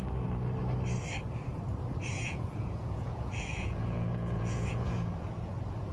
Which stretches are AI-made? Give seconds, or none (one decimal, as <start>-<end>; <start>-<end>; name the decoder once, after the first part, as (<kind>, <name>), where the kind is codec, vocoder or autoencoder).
2.1-5.5 (vocoder, Vocos)

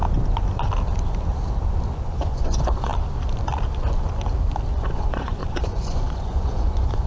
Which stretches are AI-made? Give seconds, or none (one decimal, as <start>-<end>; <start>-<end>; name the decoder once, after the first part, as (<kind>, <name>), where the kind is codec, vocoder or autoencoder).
1.9-2.9 (vocoder, Vocos); 4.7-7.1

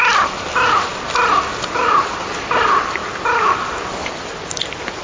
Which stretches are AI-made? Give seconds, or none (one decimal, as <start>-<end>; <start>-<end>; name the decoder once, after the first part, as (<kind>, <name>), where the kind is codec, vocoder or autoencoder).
none

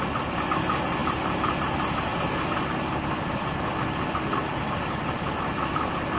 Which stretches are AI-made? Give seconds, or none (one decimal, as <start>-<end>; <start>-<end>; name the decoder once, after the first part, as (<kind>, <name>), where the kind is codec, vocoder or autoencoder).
none

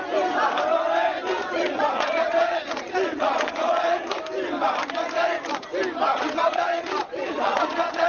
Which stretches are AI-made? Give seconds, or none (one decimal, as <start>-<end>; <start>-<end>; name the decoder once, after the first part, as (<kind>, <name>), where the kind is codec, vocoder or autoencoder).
1.4-4.2 (vocoder, Vocos); 6.1-8.1

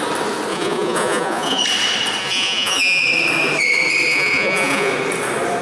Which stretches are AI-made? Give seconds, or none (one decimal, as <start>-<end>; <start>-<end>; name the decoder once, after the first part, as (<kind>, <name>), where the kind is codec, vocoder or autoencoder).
0.5-1.6 (vocoder, Vocos); 2.2-3.0; 4.1-4.9